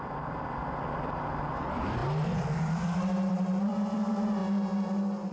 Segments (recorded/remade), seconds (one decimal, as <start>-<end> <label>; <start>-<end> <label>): 0.0-2.0 remade; 2.0-3.6 recorded; 3.6-4.4 remade; 4.4-5.3 recorded